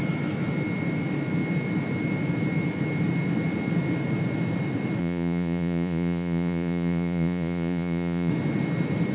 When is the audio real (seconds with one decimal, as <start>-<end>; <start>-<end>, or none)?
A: 0.0-5.0; 8.3-9.1